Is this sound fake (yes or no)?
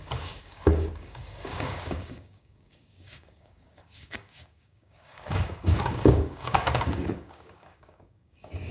yes